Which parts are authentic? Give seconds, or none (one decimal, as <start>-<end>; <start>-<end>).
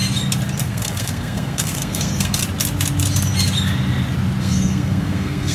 0.0-0.6; 2.4-4.4